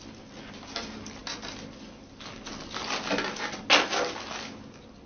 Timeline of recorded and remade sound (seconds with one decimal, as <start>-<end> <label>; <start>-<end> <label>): 0.0-5.1 recorded